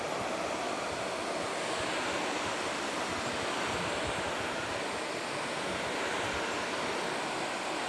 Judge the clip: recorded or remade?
recorded